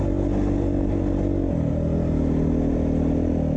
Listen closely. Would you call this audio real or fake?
real